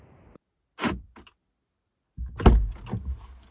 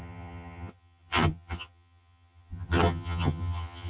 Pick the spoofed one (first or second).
second